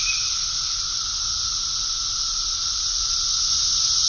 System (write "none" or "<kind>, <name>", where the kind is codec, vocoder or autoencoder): none